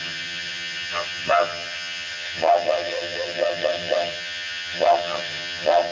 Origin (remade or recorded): remade